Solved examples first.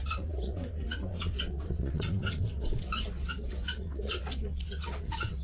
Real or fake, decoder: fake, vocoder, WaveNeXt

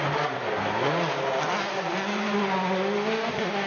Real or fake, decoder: real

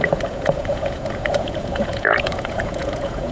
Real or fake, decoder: fake, vocoder, Vocos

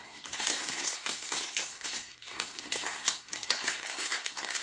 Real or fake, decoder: fake, codec, SNAC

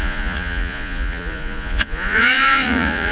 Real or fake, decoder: fake, vocoder, Vocos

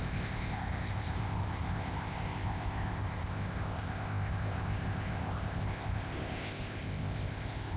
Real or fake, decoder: fake, codec, ZipCodec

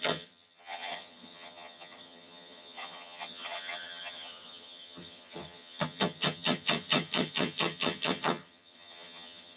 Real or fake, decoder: fake, vocoder, HiFi-GAN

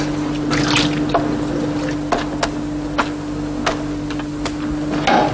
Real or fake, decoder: real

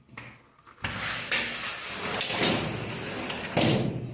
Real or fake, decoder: real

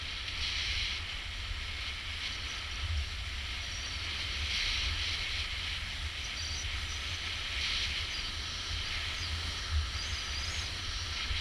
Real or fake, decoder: real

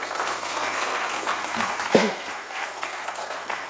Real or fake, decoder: fake, codec, SNAC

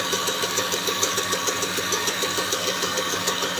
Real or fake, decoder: fake, codec, DAC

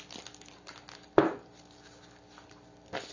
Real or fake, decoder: real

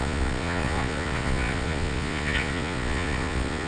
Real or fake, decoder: fake, vocoder, Vocos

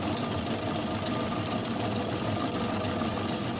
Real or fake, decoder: real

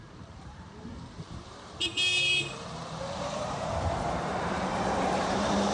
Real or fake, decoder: fake, vocoder, BigVGAN v2